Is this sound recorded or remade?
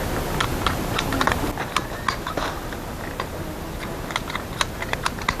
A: recorded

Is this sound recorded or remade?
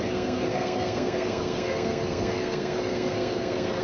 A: remade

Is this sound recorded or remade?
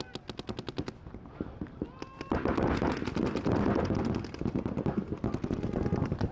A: recorded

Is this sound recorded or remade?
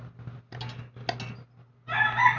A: recorded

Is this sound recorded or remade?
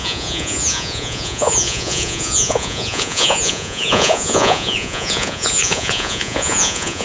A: remade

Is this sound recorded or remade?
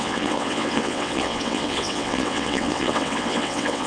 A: remade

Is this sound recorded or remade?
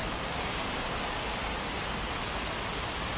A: recorded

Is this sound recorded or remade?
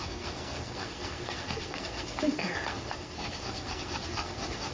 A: remade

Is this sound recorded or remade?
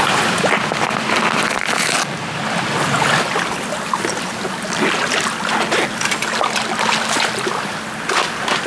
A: recorded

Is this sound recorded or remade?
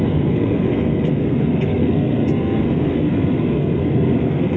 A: remade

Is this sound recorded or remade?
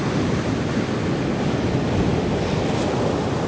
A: recorded